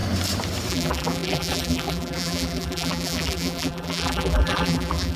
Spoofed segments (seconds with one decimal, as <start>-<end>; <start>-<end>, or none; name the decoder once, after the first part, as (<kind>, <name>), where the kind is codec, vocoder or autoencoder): 0.7-5.2 (vocoder, BigVGAN v2)